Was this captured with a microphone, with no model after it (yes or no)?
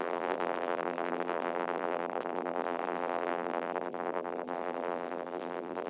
no